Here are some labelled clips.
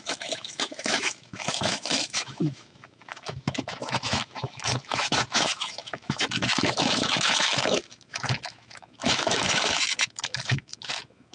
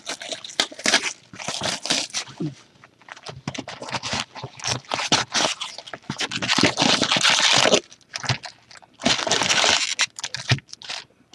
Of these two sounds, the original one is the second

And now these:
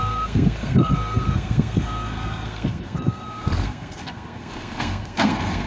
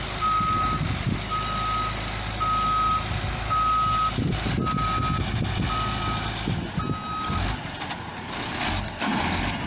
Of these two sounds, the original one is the second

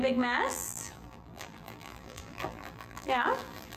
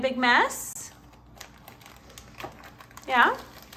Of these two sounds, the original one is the second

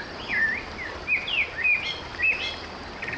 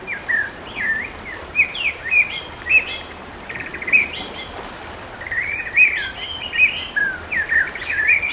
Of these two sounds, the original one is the first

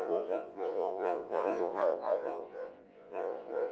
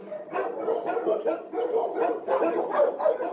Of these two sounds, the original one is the second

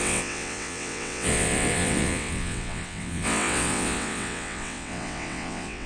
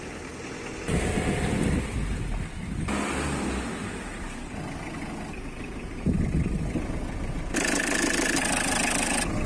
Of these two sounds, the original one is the second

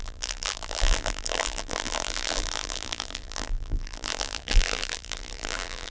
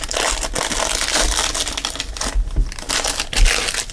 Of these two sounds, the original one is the second